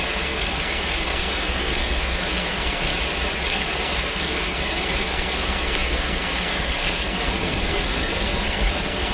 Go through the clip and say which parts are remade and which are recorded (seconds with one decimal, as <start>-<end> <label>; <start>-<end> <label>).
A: 0.0-2.9 remade; 2.9-3.5 recorded; 3.5-9.1 remade